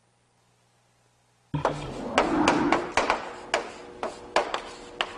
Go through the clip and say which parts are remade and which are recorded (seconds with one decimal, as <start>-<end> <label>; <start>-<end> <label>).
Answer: 0.0-5.2 recorded

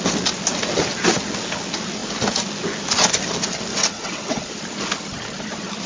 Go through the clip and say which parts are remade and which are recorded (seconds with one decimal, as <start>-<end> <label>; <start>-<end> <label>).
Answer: 0.0-3.7 recorded; 3.7-4.4 remade; 4.4-5.9 recorded

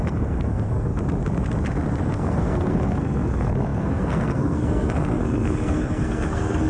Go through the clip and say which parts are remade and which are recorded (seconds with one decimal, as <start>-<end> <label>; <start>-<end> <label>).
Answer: 0.0-0.9 remade; 0.9-2.0 recorded; 2.0-6.7 remade

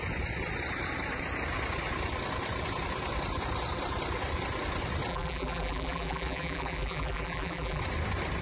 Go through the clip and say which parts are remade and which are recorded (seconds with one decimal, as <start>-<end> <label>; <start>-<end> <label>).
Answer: 0.0-5.1 recorded; 5.1-7.8 remade; 7.8-8.4 recorded

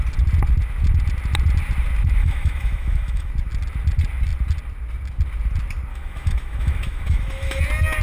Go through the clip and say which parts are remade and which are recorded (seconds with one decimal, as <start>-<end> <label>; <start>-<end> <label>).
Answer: 0.0-2.2 recorded; 2.2-3.3 remade; 3.3-5.9 recorded; 5.9-7.6 remade; 7.6-8.0 recorded